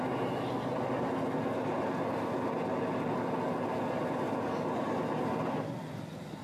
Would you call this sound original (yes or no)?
yes